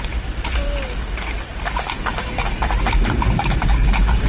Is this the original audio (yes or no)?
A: yes